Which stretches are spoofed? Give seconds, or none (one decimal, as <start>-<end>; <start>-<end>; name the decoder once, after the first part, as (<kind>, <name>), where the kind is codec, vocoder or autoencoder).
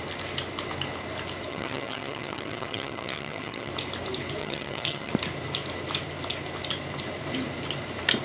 1.5-3.7 (vocoder, HiFi-GAN); 4.4-5.1